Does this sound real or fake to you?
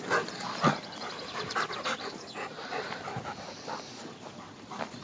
real